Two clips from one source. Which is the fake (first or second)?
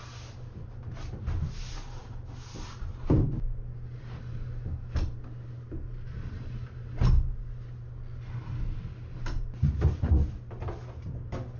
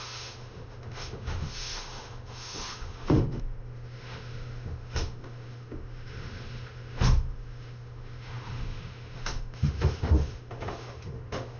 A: second